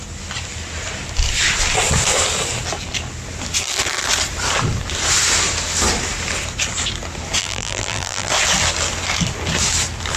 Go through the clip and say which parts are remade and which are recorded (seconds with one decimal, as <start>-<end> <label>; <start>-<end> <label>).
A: 0.0-7.4 recorded; 7.4-8.3 remade; 8.3-10.2 recorded